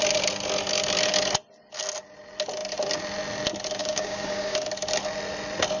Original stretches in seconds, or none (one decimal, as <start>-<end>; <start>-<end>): 0.0-3.8; 4.7-5.8